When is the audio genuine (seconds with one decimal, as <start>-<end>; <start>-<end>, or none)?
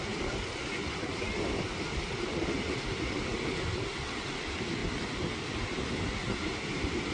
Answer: 0.0-7.1